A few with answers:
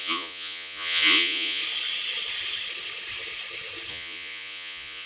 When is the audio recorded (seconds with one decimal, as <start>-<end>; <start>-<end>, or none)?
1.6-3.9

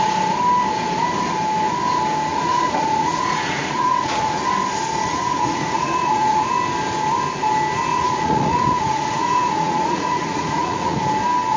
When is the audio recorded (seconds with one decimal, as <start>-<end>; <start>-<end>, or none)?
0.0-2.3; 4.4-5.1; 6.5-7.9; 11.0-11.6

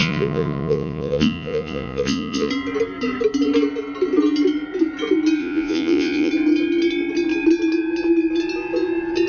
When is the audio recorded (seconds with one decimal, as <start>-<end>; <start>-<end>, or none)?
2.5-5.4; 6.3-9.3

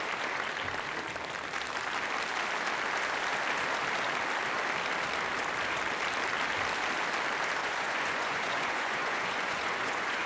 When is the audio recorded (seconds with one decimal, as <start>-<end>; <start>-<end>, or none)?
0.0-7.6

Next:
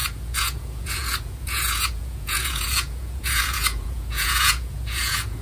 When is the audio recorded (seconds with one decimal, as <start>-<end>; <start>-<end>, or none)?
none

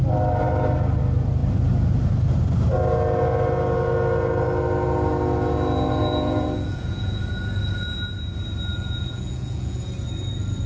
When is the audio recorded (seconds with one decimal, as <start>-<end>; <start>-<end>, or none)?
0.0-6.0; 7.2-8.7; 9.9-10.7